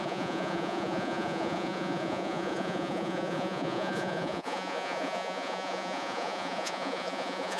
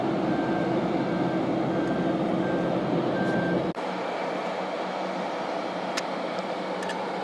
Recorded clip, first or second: second